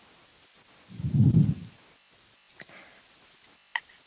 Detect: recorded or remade recorded